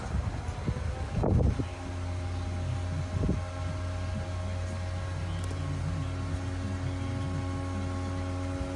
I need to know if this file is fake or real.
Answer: real